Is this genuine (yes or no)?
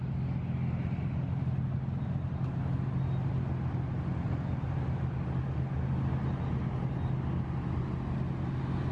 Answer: yes